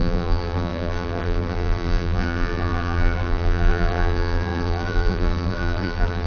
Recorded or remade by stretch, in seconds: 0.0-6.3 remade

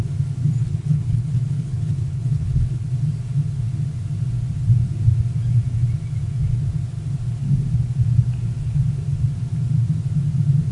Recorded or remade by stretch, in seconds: 0.0-0.6 recorded; 0.6-2.9 remade; 2.9-10.7 recorded

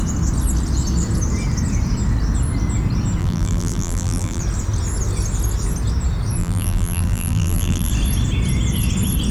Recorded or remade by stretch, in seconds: 0.0-3.2 recorded; 3.2-4.4 remade; 4.4-6.4 recorded; 6.4-7.9 remade; 7.9-9.3 recorded

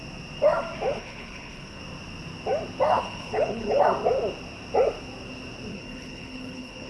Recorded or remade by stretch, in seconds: 0.0-0.9 recorded; 0.9-1.8 remade; 1.8-2.9 recorded; 2.9-3.8 remade; 3.8-5.7 recorded; 5.7-6.9 remade

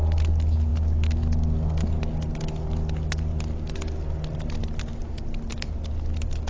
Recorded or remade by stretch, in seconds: 0.0-6.5 recorded

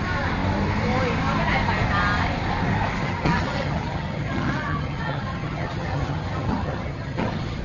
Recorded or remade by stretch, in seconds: 0.0-3.0 recorded; 3.0-7.6 remade

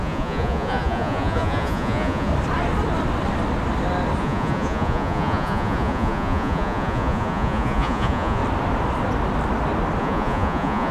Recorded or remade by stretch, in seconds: 0.0-2.3 remade; 2.3-4.2 recorded; 4.2-8.4 remade; 8.4-10.0 recorded; 10.0-10.9 remade

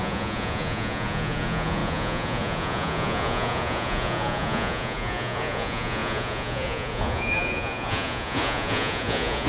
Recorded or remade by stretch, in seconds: 0.0-9.5 remade